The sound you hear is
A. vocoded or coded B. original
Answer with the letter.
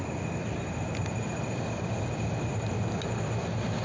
B